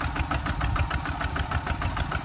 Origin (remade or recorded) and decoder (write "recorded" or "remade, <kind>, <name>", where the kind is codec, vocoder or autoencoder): recorded